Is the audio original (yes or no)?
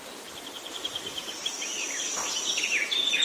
no